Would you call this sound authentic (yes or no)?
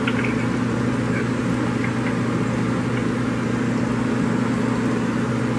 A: yes